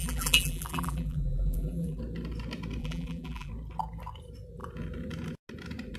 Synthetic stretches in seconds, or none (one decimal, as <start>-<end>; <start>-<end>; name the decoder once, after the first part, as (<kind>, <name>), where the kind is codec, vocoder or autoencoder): 0.0-2.0 (vocoder, BigVGAN v2); 2.8-3.5

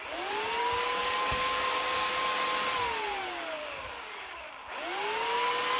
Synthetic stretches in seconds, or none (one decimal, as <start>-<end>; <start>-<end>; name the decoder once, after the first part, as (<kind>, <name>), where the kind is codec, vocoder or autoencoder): 1.0-2.2 (codec, DAC); 3.6-4.4

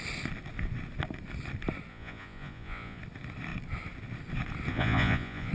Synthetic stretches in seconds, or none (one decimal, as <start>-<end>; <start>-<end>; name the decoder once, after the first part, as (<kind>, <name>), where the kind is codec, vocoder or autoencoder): 1.9-3.0 (vocoder, Vocos); 4.7-5.5

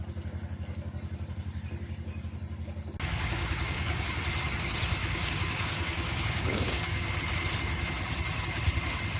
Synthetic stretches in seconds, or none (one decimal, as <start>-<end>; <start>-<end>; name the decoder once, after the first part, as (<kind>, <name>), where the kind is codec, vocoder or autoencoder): 3.1-4.1 (codec, DAC); 5.0-7.1

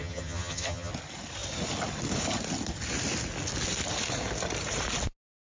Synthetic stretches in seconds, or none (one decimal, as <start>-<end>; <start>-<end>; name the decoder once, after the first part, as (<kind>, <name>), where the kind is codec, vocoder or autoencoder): 0.0-0.9 (vocoder, HiFi-GAN)

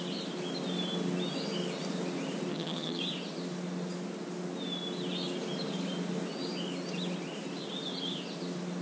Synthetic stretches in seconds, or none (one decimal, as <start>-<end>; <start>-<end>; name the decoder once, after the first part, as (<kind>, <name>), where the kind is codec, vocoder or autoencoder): 2.5-3.0 (vocoder, HiFi-GAN)

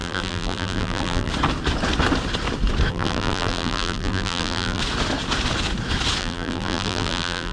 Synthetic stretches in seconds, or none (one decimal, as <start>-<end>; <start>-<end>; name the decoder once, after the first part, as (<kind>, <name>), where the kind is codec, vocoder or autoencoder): 0.0-1.3 (vocoder, BigVGAN v2); 2.9-4.8; 6.2-7.5